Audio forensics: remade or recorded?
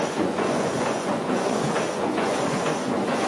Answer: remade